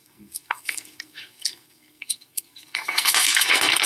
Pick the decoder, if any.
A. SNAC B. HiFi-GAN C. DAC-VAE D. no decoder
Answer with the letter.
A